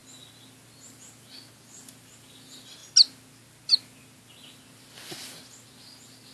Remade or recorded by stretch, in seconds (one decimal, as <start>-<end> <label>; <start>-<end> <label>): 0.0-6.3 recorded